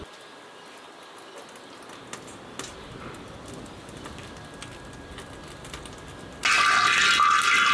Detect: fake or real real